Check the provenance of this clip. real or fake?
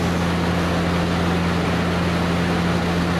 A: real